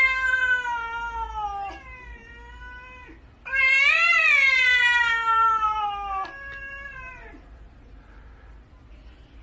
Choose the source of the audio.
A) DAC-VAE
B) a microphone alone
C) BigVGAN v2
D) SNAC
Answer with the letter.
B